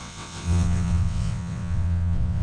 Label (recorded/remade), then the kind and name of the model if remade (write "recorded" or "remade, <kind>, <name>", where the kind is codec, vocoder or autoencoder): remade, vocoder, WaveNeXt